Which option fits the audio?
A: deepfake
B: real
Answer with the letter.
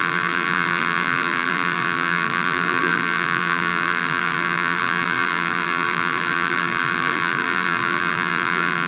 A